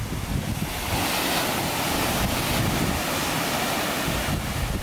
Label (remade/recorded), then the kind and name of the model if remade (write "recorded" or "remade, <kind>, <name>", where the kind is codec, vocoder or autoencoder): recorded